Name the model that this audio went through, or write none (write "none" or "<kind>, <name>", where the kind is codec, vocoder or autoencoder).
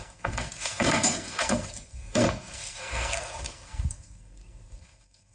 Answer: codec, SNAC